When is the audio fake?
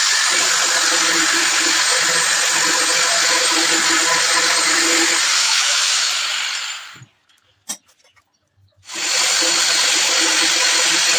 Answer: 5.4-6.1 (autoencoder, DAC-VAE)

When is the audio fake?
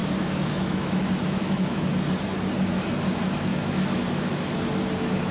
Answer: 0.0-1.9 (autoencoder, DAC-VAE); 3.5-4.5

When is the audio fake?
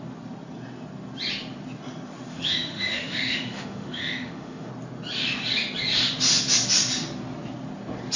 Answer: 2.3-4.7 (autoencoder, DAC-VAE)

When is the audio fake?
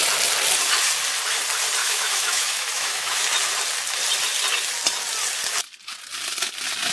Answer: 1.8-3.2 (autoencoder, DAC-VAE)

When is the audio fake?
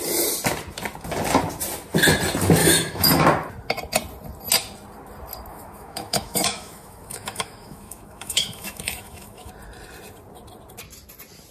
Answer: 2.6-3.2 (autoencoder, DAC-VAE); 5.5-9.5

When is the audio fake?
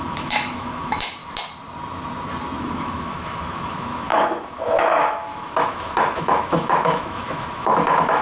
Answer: 0.0-1.2 (autoencoder, DAC-VAE); 2.6-8.2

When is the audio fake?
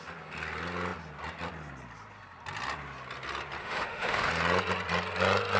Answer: 3.6-4.3 (autoencoder, DAC-VAE)